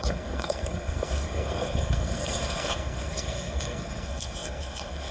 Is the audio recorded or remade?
remade